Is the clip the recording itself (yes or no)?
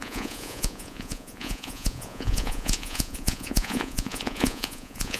no